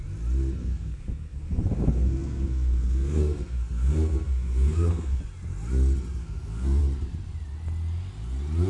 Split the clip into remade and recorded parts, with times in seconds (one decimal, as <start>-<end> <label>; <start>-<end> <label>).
0.0-0.6 recorded; 0.6-5.2 remade; 5.2-6.2 recorded; 6.2-6.8 remade; 6.8-8.7 recorded